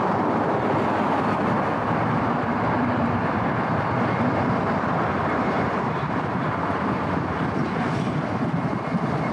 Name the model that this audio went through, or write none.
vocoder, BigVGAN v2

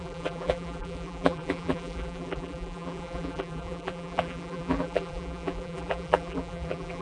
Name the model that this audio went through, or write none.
vocoder, BigVGAN v2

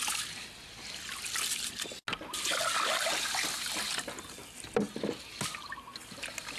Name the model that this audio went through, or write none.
none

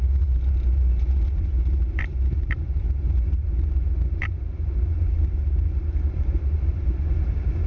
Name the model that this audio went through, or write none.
vocoder, BigVGAN v2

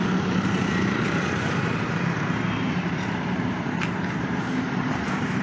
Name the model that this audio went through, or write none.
vocoder, BigVGAN v2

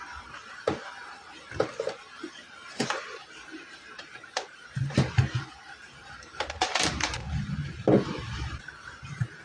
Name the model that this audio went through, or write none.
vocoder, BigVGAN v2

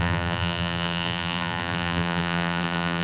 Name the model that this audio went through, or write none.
vocoder, BigVGAN v2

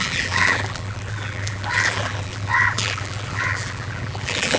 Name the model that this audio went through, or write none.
vocoder, BigVGAN v2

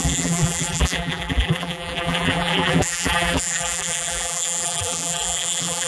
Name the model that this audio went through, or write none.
vocoder, BigVGAN v2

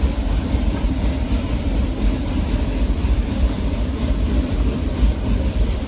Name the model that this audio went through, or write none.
vocoder, BigVGAN v2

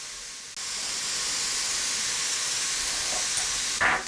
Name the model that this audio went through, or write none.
none